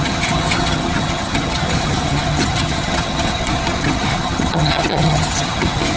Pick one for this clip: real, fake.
fake